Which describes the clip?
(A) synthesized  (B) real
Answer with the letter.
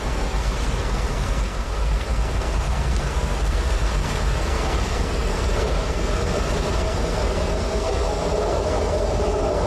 A